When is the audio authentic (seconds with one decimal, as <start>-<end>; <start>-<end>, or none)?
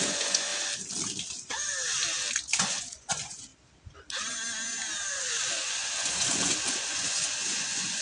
0.5-2.6; 3.5-5.1